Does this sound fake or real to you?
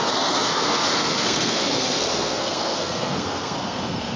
fake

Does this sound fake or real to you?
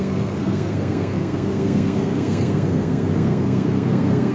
fake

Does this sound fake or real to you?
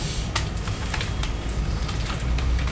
real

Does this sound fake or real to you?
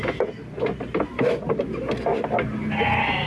real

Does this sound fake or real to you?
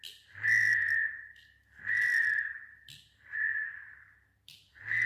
real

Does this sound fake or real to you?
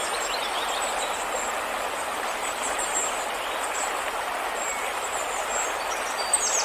real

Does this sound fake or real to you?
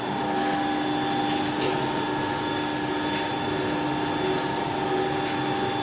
real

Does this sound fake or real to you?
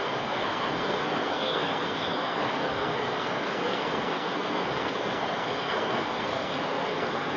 fake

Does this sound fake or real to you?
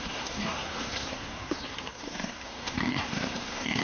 fake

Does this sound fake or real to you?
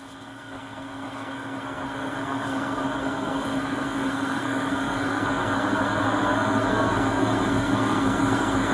fake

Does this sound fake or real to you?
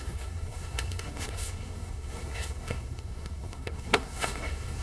fake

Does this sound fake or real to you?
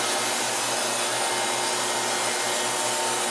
real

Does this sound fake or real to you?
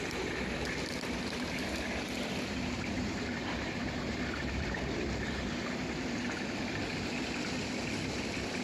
real